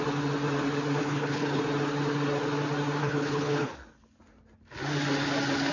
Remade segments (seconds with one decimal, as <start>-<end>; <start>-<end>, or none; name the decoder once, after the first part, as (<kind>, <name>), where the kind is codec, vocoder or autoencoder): 1.0-1.6 (codec, HILCodec); 3.0-3.7